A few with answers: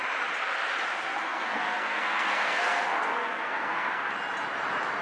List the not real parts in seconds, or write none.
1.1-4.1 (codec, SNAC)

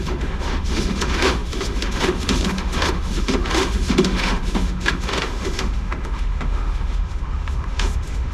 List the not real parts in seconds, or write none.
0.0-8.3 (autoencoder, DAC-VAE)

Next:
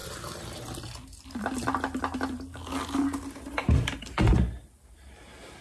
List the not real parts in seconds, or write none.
3.4-4.3 (vocoder, BigVGAN v2)

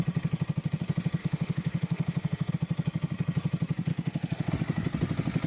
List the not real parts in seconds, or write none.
1.2-2.5 (autoencoder, DAC-VAE); 3.9-4.5

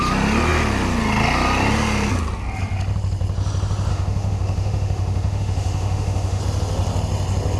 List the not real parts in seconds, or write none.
3.9-6.4 (autoencoder, DAC-VAE)